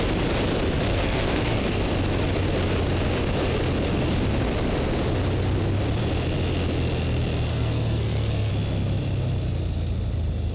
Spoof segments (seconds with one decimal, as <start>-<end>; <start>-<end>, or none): 0.9-1.8; 7.5-8.5